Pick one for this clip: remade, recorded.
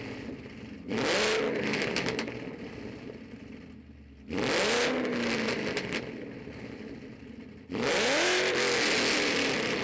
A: recorded